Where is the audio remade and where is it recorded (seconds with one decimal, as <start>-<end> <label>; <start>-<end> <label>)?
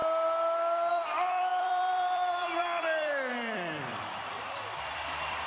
0.0-0.9 recorded; 0.9-5.5 remade